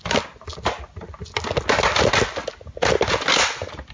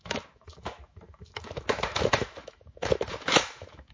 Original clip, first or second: first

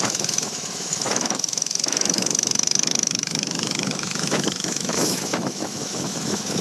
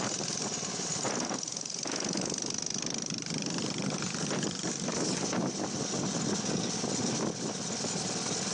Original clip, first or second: second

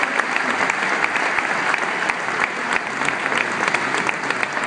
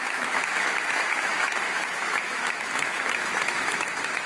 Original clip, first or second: first